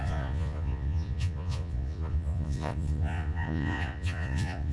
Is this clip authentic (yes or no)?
no